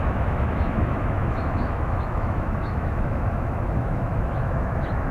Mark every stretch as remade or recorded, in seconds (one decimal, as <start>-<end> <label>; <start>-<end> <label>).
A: 0.0-5.1 remade